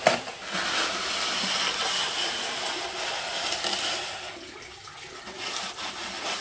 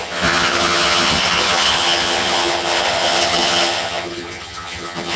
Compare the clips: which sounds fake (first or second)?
second